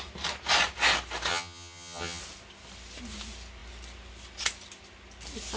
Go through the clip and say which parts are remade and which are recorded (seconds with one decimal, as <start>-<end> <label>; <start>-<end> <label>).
0.0-1.3 recorded; 1.3-2.2 remade; 2.2-5.6 recorded